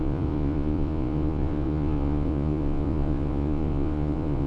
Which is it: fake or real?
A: fake